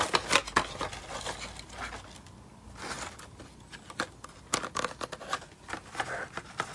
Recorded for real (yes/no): yes